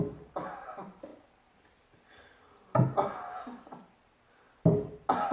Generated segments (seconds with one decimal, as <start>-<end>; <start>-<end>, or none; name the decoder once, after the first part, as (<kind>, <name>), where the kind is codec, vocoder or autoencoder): none